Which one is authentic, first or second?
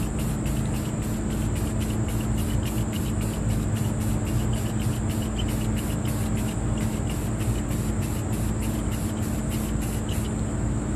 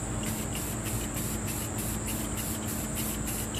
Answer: first